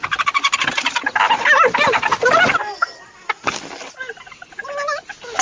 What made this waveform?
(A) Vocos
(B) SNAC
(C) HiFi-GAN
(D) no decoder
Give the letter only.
D